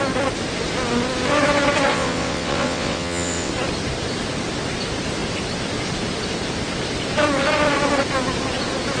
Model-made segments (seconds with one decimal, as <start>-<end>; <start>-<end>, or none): 1.9-3.5